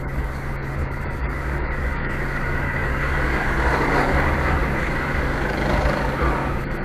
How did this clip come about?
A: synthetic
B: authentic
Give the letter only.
A